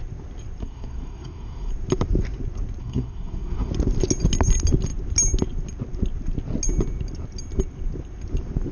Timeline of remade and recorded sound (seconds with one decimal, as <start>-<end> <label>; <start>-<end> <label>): 0.0-0.6 recorded; 0.6-1.7 remade; 1.7-2.8 recorded; 2.8-3.7 remade; 3.7-8.7 recorded